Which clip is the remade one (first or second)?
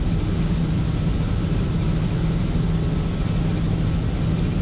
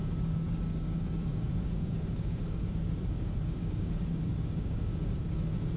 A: second